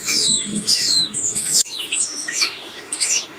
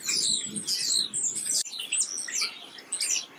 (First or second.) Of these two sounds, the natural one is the second